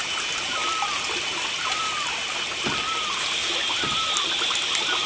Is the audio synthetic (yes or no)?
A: no